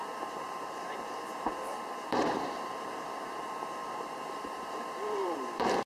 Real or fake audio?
fake